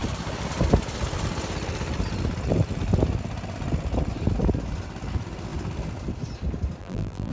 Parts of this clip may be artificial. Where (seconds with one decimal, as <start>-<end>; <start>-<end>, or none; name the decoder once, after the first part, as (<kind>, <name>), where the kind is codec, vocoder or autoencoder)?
6.8-7.3 (vocoder, BigVGAN v2)